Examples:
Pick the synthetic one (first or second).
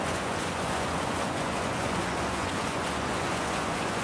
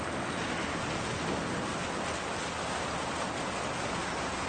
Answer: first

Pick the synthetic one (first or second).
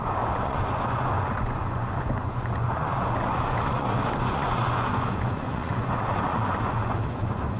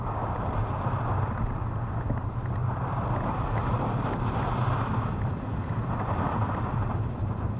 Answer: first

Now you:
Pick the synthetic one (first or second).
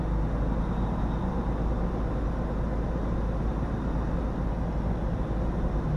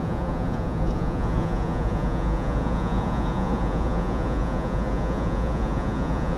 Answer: second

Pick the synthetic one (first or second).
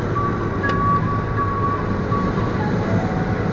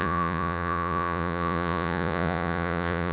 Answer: second